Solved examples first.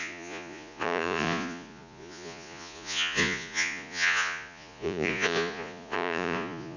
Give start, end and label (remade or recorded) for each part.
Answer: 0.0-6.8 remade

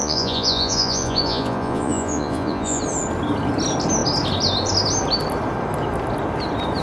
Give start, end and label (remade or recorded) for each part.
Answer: 0.0-2.8 remade; 2.8-6.8 recorded